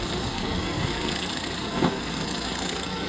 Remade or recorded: remade